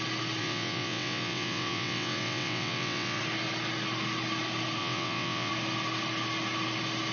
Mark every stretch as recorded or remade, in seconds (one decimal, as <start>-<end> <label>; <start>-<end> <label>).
0.0-0.4 recorded; 0.4-3.2 remade; 3.2-4.8 recorded; 4.8-5.5 remade; 5.5-7.1 recorded